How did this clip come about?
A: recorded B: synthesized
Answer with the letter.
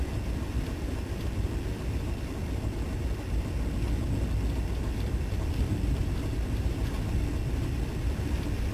A